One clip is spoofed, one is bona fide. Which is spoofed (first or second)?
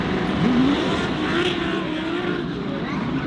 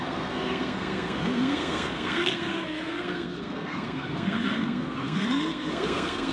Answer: second